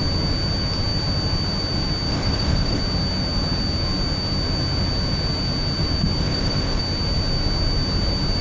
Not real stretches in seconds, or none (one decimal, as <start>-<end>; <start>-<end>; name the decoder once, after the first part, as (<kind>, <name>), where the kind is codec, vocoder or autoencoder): 2.1-2.8 (codec, ZipCodec); 6.2-6.8